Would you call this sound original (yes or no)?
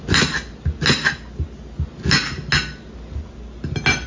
yes